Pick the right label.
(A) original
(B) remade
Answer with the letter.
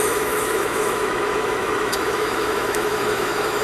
B